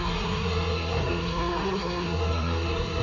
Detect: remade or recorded remade